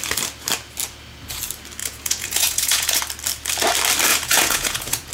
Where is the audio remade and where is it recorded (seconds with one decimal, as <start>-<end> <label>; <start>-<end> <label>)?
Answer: 0.0-1.8 recorded; 1.8-3.0 remade; 3.0-4.1 recorded; 4.1-5.1 remade